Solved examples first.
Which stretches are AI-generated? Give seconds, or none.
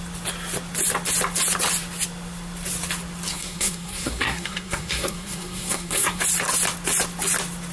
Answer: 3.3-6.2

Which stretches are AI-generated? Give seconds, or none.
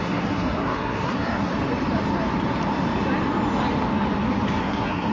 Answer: 0.0-1.5; 4.6-5.1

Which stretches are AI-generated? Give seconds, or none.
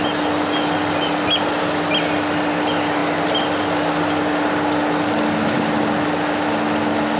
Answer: none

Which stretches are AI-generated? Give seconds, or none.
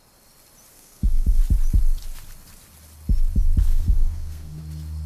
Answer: 0.7-1.4; 3.7-4.6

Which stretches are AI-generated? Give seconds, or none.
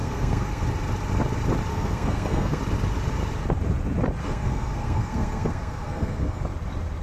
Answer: 0.0-0.6; 1.7-2.6; 4.2-6.4